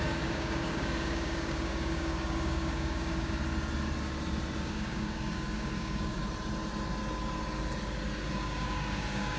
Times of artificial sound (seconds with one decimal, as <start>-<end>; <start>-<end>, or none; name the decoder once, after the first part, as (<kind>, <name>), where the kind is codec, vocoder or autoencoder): 0.0-3.4 (codec, DAC); 4.6-6.2; 8.3-9.4